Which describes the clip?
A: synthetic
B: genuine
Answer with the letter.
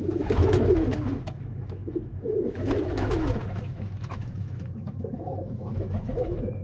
A